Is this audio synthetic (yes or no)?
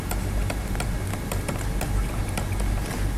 no